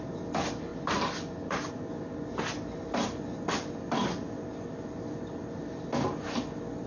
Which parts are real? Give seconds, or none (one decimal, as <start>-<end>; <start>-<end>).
0.0-6.9